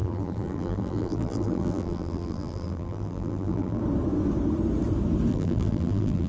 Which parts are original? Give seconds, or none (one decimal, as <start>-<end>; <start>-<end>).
3.8-5.3